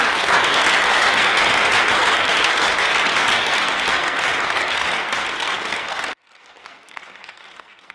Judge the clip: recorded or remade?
remade